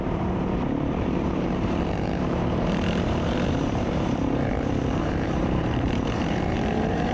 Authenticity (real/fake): fake